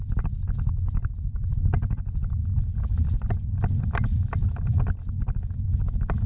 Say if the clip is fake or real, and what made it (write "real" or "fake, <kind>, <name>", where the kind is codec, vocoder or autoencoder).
real